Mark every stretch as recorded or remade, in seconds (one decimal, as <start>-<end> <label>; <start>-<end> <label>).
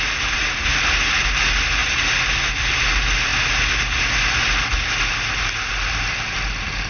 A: 0.0-6.9 recorded